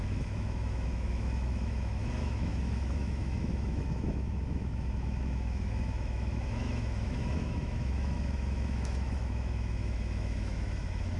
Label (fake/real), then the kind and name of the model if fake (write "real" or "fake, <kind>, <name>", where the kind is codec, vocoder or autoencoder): fake, autoencoder, DAC-VAE